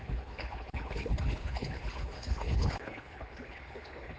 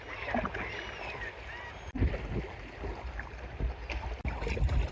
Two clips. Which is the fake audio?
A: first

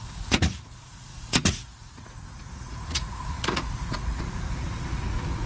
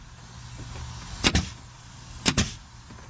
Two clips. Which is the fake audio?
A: first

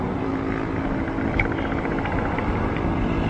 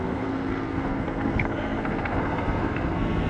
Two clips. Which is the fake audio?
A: second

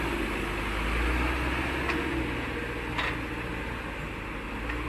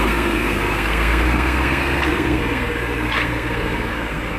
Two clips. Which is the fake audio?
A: second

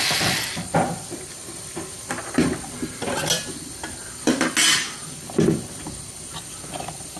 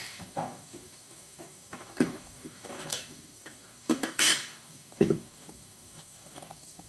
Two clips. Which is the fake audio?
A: second